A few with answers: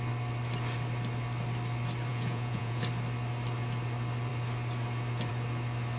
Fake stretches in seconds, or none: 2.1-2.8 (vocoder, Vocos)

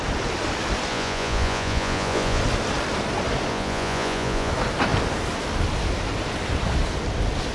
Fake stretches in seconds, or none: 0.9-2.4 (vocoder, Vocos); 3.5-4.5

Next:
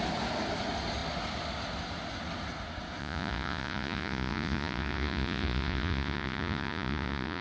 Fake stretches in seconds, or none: 3.0-7.4 (vocoder, Vocos)